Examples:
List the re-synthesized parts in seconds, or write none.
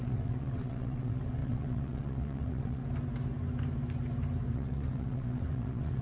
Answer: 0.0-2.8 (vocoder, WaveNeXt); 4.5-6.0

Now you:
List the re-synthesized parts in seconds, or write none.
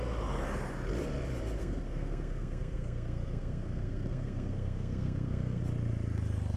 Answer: 1.6-5.6 (codec, SNAC)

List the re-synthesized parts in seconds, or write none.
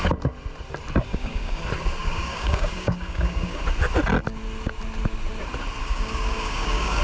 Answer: 1.1-1.6 (codec, DAC); 2.0-3.6; 5.8-7.0